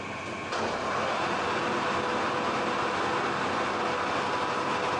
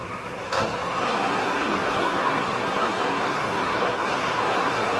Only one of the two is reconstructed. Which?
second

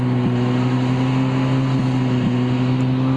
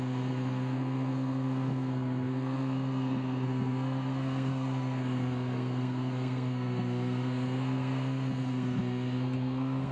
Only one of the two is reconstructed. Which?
second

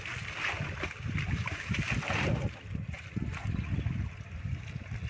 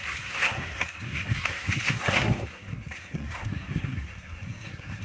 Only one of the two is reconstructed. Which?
second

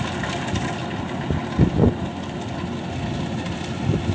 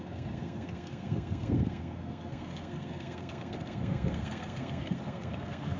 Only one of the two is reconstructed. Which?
second